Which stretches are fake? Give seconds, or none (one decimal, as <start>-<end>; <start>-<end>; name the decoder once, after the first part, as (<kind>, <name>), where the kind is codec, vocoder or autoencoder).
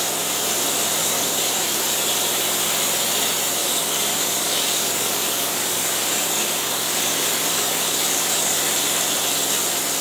1.0-2.1 (codec, DAC); 3.6-8.6